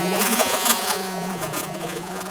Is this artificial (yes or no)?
yes